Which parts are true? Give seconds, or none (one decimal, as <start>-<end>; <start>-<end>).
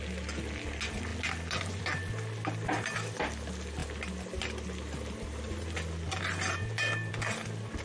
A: 0.0-7.8